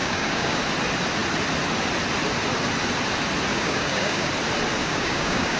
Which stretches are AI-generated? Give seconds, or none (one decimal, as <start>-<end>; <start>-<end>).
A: 0.0-0.6; 3.5-4.3; 4.8-5.6